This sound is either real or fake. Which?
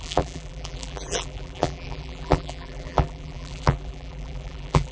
fake